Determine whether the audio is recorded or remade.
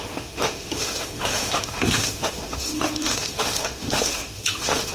remade